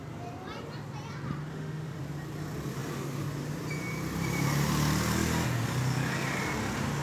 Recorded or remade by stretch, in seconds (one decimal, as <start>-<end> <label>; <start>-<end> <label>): 0.0-1.5 recorded; 1.5-2.0 remade; 2.0-7.0 recorded